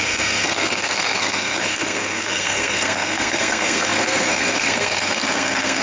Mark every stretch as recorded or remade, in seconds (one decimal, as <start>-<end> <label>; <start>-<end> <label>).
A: 0.0-5.8 remade